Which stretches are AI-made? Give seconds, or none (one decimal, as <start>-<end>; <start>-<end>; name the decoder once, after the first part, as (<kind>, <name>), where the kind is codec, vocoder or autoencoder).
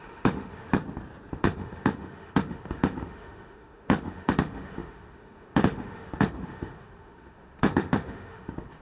0.0-0.7 (autoencoder, DAC-VAE); 1.3-8.8